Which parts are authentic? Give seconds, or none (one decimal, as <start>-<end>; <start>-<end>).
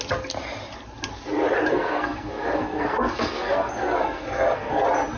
0.0-1.7; 4.8-5.2